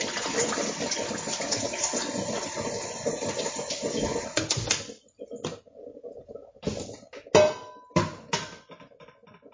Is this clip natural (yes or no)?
yes